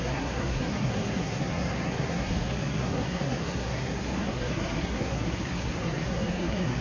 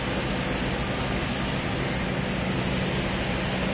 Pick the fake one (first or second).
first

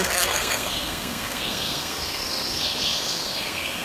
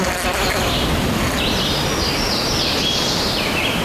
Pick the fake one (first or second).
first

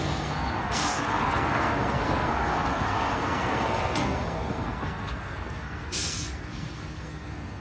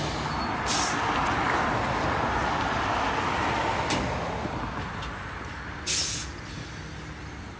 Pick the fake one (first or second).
first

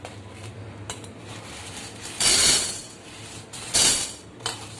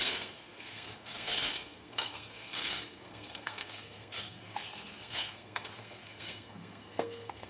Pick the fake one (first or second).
second